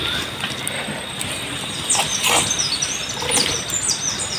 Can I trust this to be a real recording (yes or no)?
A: yes